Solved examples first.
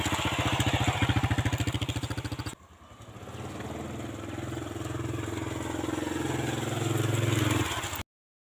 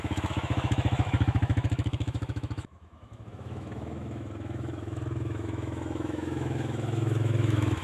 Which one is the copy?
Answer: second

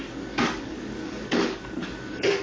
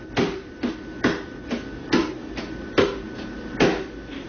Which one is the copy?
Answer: first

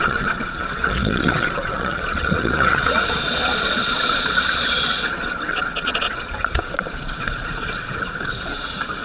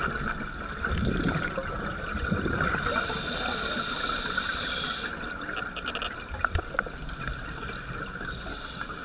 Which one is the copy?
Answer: first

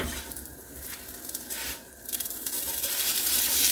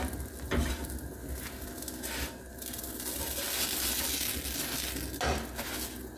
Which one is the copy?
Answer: first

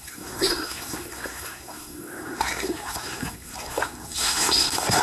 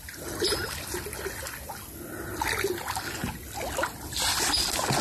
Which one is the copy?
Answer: first